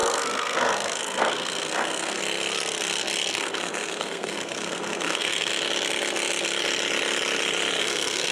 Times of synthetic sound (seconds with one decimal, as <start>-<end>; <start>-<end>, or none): 0.0-2.2; 3.3-5.5; 7.8-8.3